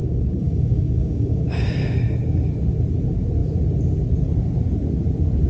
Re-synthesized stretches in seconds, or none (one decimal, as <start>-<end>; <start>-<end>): 0.0-2.0